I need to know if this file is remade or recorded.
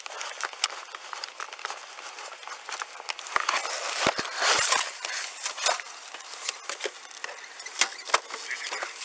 recorded